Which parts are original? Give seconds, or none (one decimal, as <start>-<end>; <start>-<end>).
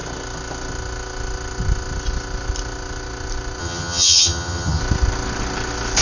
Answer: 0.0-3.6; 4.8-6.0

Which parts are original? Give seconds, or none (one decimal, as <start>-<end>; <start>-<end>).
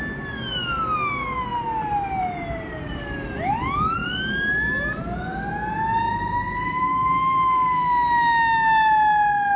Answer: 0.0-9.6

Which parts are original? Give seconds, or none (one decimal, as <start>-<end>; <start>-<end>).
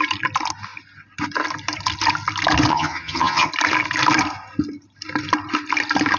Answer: 0.0-2.7; 3.5-6.2